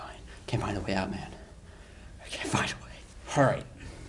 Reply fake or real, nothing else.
real